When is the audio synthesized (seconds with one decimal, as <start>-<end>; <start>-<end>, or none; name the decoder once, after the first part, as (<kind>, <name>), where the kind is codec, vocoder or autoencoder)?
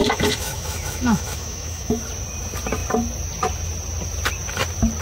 0.0-2.0 (autoencoder, DAC-VAE)